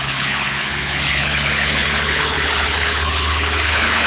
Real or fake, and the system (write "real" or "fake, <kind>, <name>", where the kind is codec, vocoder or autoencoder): fake, codec, HILCodec